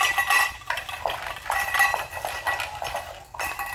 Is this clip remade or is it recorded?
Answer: recorded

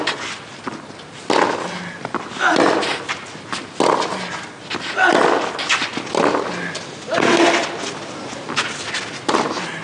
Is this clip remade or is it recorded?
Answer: recorded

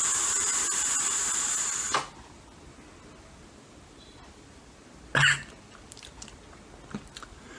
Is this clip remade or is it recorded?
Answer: recorded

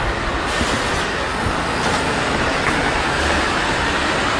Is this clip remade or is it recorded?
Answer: recorded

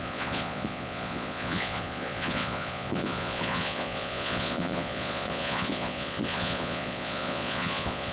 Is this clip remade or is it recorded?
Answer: remade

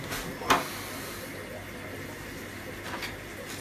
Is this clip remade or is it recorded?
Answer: recorded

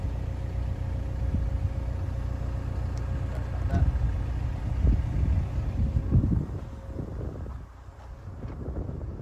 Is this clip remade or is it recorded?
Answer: recorded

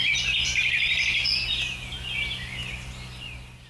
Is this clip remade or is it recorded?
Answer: recorded